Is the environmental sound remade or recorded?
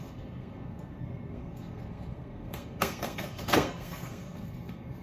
remade